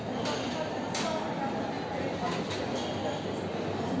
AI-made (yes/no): no